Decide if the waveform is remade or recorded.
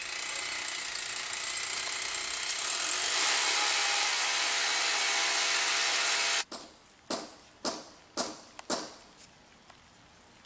recorded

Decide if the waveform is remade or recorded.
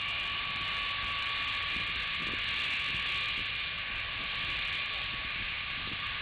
recorded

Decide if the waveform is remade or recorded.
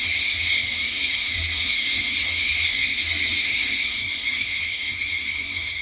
remade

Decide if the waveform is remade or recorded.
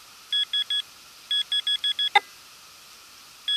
recorded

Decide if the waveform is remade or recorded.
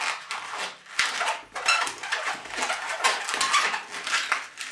recorded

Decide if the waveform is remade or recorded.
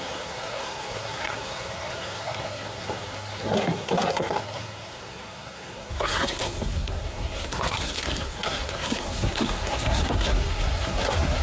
remade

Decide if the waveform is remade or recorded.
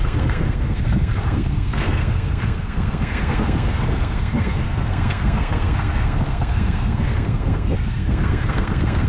remade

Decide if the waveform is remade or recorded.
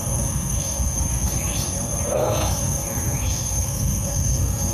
remade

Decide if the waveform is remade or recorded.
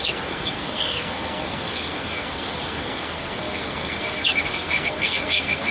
remade